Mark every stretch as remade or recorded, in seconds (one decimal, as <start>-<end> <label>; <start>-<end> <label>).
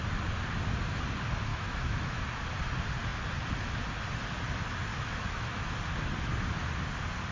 0.0-1.5 recorded; 1.5-2.2 remade; 2.2-4.9 recorded; 4.9-5.7 remade; 5.7-7.3 recorded